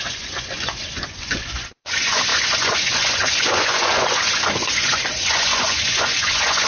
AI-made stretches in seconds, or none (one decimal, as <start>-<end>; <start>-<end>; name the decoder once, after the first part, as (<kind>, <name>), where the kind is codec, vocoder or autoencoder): 0.0-6.7 (vocoder, Vocos)